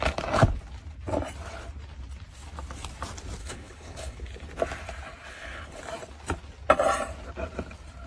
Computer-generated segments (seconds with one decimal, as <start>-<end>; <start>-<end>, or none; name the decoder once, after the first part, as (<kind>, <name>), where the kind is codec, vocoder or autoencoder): 3.4-4.2 (codec, HILCodec); 5.3-5.8